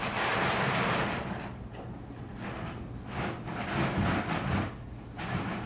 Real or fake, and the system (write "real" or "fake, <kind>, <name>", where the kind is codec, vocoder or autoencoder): real